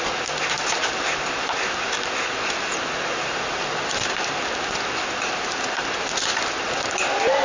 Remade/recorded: recorded